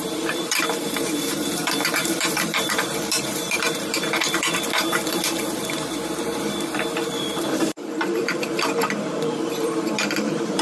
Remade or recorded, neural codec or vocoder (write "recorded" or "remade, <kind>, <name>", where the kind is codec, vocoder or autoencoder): remade, vocoder, BigVGAN v2